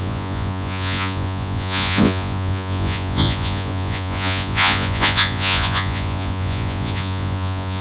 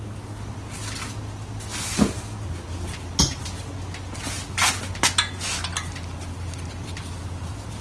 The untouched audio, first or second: second